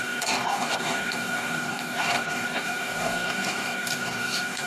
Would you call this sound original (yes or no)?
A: no